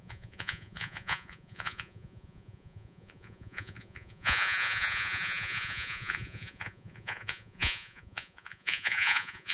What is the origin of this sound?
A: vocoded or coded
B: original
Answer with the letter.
A